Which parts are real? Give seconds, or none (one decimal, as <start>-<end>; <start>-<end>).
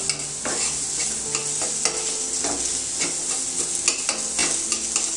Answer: 0.0-5.2